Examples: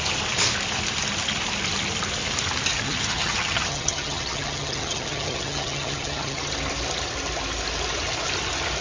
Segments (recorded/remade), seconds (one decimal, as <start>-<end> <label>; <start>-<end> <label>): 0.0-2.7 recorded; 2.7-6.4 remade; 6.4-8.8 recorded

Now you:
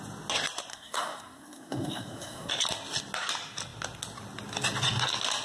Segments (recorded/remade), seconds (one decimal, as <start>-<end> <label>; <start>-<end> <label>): 0.0-0.7 recorded; 0.7-2.5 remade; 2.5-5.4 recorded

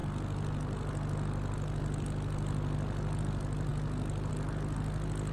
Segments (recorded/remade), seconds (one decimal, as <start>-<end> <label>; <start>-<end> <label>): 0.0-5.3 recorded